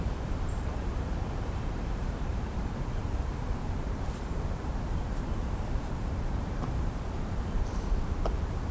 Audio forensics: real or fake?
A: fake